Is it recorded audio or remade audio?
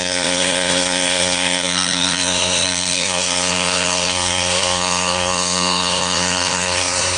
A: remade